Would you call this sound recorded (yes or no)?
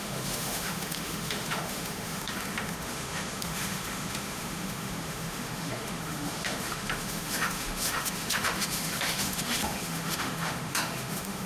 no